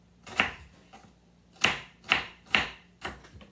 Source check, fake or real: real